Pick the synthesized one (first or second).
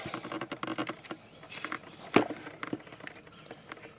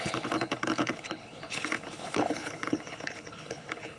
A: second